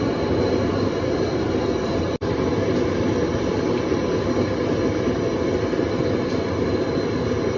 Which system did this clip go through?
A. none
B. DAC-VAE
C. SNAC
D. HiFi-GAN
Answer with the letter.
A